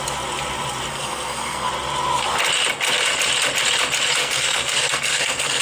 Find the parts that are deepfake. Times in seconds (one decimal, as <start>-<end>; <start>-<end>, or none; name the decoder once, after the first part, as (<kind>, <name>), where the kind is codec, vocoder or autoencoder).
0.9-1.7 (codec, SNAC); 4.2-5.6